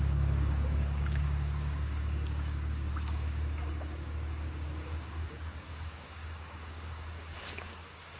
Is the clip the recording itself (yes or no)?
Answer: no